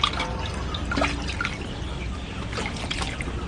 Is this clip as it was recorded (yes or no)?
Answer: yes